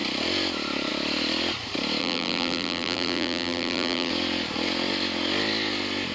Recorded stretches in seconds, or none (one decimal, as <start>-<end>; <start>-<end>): 0.0-2.0; 4.1-6.1